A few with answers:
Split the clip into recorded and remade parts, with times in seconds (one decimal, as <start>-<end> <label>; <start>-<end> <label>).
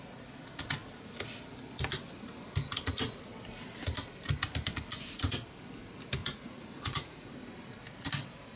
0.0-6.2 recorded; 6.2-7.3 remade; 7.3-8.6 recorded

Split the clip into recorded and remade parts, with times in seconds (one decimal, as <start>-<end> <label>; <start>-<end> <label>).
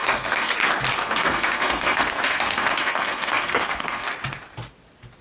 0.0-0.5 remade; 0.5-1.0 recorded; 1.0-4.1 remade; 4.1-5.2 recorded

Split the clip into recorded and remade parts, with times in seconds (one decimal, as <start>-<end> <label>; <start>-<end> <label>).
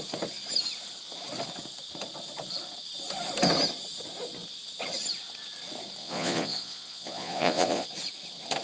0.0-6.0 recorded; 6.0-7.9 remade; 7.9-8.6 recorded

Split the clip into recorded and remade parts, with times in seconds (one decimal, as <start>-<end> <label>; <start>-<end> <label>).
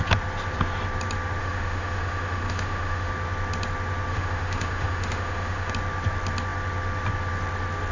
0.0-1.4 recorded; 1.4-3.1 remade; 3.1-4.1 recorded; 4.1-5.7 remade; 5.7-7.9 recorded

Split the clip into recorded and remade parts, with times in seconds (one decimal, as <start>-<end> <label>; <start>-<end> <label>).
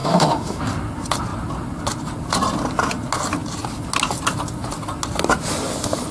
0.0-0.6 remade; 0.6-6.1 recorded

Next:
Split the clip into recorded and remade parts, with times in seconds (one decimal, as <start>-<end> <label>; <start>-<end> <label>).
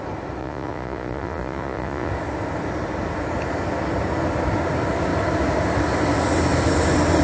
0.0-0.4 recorded; 0.4-2.1 remade; 2.1-7.2 recorded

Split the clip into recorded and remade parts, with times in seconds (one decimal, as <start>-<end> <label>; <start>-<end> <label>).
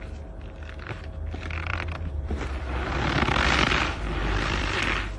0.0-1.7 recorded; 1.7-4.8 remade; 4.8-5.2 recorded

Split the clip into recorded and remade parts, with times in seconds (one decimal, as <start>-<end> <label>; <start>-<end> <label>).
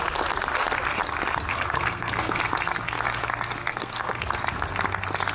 0.0-1.5 recorded; 1.5-2.4 remade; 2.4-3.7 recorded; 3.7-4.2 remade; 4.2-5.3 recorded